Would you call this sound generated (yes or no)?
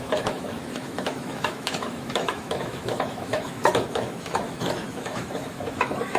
yes